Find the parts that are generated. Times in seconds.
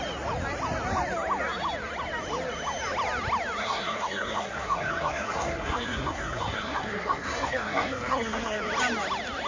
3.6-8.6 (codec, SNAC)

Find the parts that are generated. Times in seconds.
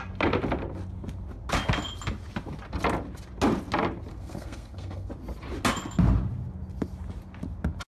4.1-5.1 (codec, SNAC)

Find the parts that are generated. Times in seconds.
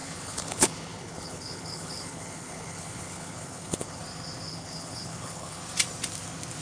0.0-4.0 (codec, HILCodec); 4.5-5.6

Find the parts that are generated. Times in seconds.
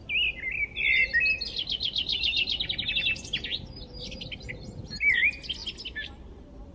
none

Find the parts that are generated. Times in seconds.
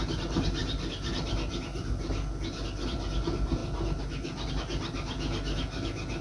none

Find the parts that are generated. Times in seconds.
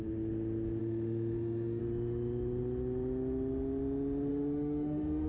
0.8-1.8 (autoencoder, DAC-VAE); 4.3-5.3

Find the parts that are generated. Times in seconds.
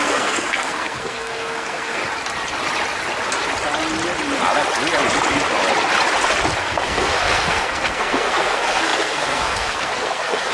0.0-2.0 (codec, SNAC); 6.6-10.5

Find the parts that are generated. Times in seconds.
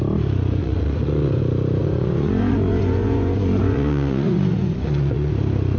0.6-1.4 (vocoder, Vocos); 1.8-5.3